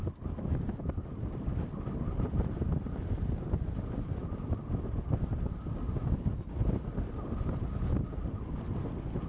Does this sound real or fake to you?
real